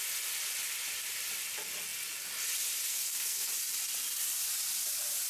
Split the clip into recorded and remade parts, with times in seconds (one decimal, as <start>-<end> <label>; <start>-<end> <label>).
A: 0.0-2.9 recorded; 2.9-3.5 remade; 3.5-5.3 recorded

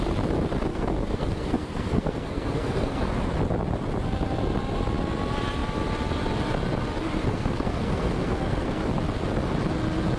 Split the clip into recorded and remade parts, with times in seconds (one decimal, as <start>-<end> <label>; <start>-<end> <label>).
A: 0.0-0.7 recorded; 0.7-3.1 remade; 3.1-7.3 recorded; 7.3-8.8 remade; 8.8-10.2 recorded

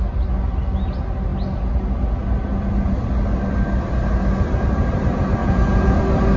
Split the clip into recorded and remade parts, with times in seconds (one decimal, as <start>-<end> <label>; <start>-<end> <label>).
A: 0.0-5.4 recorded; 5.4-6.0 remade; 6.0-6.4 recorded

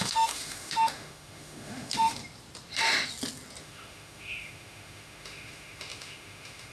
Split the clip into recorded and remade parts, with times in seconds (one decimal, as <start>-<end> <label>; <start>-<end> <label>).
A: 0.0-2.2 remade; 2.2-3.6 recorded; 3.6-6.7 remade

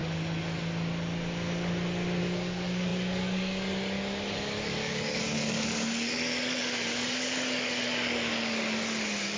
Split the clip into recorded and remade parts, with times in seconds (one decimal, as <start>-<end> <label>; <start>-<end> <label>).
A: 0.0-2.2 recorded; 2.2-9.4 remade

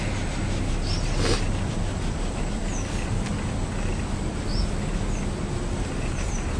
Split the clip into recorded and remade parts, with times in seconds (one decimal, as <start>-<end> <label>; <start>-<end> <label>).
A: 0.0-1.9 recorded; 1.9-2.6 remade; 2.6-6.6 recorded

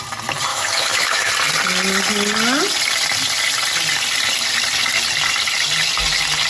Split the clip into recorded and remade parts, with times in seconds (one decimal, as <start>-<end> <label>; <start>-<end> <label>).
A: 0.0-0.5 recorded; 0.5-1.3 remade; 1.3-6.5 recorded